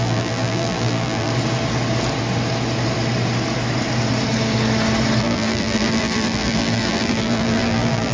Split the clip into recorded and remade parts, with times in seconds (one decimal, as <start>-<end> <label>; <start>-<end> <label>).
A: 0.0-1.3 remade; 1.3-5.2 recorded; 5.2-8.1 remade

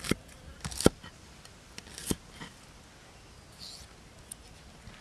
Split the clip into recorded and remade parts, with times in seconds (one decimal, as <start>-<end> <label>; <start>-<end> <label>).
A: 0.0-2.0 remade; 2.0-5.0 recorded

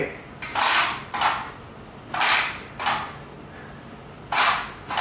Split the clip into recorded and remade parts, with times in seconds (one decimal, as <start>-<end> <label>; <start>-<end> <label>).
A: 0.0-5.0 recorded

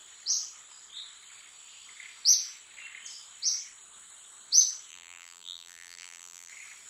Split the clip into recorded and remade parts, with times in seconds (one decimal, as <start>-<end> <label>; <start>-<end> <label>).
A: 0.0-4.9 recorded; 4.9-6.5 remade; 6.5-6.9 recorded

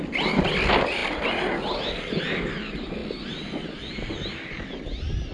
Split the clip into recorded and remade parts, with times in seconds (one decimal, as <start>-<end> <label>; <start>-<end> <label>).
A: 0.0-5.3 recorded